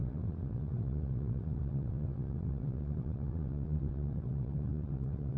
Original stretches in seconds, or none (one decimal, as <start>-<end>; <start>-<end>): none